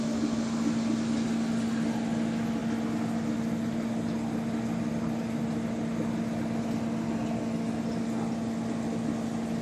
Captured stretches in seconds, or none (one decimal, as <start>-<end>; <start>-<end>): 0.0-9.6